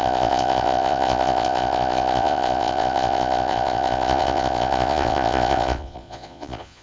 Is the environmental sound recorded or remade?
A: remade